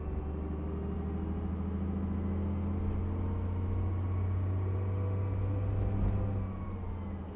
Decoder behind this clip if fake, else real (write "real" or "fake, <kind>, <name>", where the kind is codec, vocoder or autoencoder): real